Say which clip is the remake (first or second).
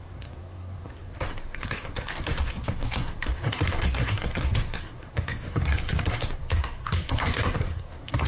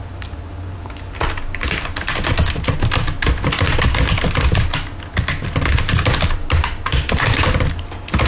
first